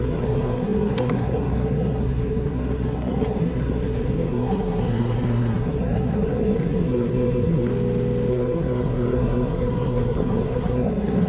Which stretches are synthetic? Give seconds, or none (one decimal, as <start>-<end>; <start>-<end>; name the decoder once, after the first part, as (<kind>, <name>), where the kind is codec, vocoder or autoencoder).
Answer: 0.0-7.7 (codec, SNAC); 8.3-11.3